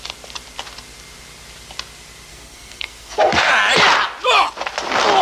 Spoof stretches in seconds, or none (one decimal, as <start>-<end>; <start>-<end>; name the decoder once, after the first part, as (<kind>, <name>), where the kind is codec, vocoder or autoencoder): 2.3-3.5 (codec, SNAC)

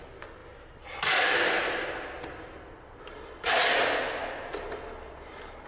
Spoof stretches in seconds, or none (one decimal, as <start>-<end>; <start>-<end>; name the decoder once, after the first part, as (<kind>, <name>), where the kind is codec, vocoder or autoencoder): none